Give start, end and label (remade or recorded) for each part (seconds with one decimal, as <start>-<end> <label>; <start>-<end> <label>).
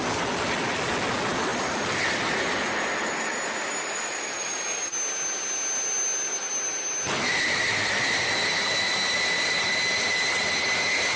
0.0-1.5 recorded; 1.5-2.8 remade; 2.8-11.2 recorded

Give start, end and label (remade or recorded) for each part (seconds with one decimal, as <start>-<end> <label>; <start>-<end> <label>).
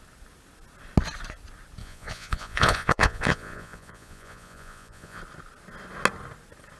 0.0-1.8 recorded; 1.8-5.2 remade; 5.2-6.8 recorded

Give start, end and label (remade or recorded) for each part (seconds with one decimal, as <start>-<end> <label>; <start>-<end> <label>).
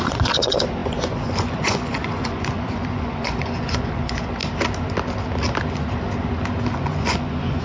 0.0-4.4 remade; 4.4-6.7 recorded; 6.7-7.6 remade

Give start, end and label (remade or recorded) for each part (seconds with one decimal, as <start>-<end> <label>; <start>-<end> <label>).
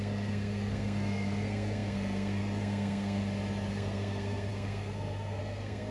0.0-3.2 remade; 3.2-3.7 recorded; 3.7-5.9 remade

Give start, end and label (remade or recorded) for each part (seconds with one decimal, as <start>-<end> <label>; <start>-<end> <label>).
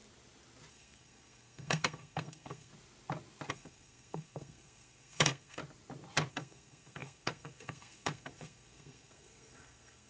0.0-0.7 recorded; 0.7-2.7 remade; 2.7-3.5 recorded; 3.5-5.6 remade; 5.6-6.3 recorded; 6.3-10.1 remade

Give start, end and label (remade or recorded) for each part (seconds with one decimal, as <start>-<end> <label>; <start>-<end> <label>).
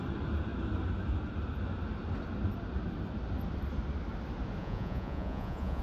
0.0-4.6 recorded; 4.6-5.8 remade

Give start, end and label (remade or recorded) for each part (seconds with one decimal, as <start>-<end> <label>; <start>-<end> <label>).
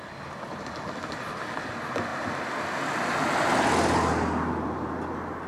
0.0-5.5 recorded